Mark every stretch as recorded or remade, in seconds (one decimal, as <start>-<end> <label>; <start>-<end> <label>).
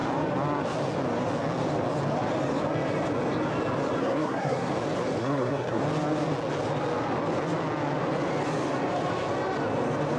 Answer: 0.0-4.0 recorded; 4.0-4.7 remade; 4.7-5.2 recorded; 5.2-5.8 remade; 5.8-10.2 recorded